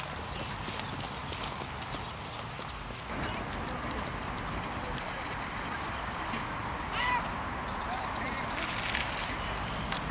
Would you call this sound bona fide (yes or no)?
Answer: yes